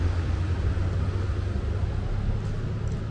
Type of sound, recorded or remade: recorded